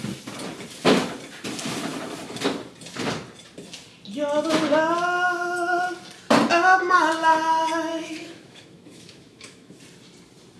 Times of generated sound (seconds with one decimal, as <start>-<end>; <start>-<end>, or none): 7.9-9.8